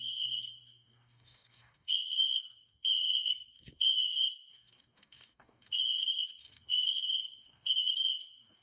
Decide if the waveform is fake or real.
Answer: fake